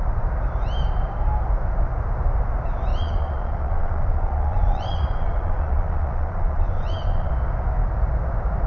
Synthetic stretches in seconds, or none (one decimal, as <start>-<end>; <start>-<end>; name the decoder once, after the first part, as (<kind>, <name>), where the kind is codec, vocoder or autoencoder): 2.9-7.3 (vocoder, Vocos)